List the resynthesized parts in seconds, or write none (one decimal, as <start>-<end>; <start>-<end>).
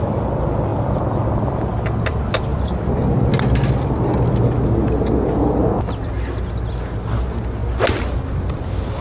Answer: none